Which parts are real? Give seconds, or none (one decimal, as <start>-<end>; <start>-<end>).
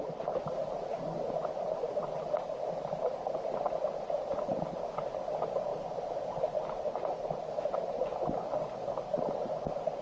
0.6-5.1; 5.7-9.6